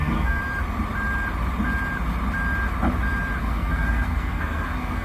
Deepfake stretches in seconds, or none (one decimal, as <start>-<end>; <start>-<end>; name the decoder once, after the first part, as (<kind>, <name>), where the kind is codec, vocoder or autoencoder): 0.0-0.4 (codec, SNAC); 3.4-5.0